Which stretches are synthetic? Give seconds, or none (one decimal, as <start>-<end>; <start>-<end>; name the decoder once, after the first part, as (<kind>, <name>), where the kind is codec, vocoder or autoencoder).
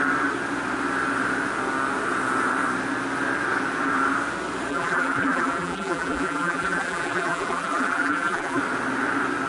4.7-8.6 (vocoder, BigVGAN v2)